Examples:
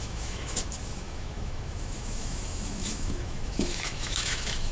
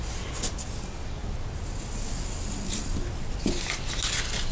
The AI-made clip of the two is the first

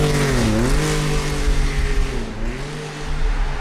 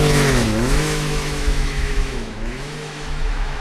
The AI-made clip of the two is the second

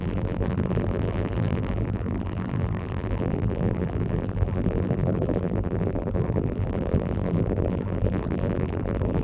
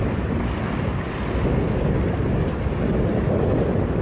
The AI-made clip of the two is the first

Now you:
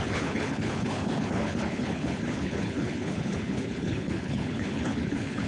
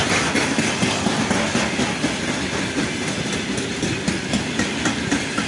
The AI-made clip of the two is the first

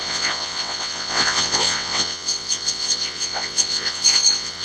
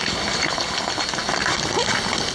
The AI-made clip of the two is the first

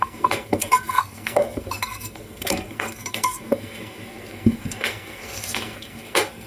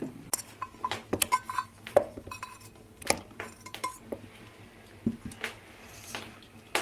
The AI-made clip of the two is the first